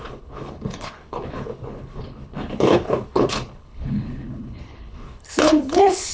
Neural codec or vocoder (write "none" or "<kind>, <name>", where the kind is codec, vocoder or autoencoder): codec, HILCodec